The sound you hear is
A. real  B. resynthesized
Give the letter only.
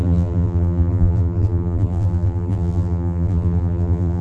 B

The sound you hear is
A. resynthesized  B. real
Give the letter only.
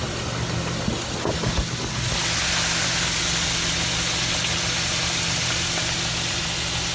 B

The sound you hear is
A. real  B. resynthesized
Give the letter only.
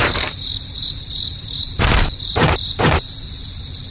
B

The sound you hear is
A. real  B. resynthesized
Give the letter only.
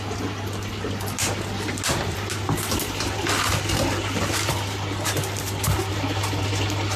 A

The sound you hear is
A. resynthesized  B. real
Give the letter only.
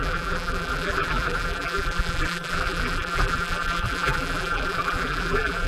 A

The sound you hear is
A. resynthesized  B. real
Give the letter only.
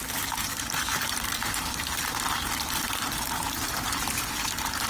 A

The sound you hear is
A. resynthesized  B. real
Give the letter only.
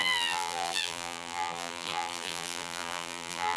A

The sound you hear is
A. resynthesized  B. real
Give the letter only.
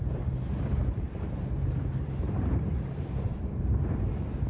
A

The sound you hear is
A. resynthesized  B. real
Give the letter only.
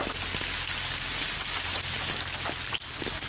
B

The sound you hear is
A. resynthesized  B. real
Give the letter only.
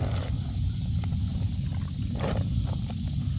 B